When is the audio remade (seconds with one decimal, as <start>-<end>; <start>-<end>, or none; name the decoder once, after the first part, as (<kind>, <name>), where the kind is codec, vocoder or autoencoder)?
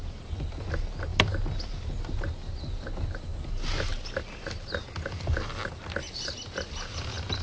none